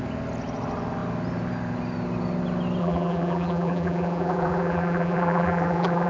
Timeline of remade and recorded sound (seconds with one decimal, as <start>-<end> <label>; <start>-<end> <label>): 0.0-2.8 recorded; 2.8-6.1 remade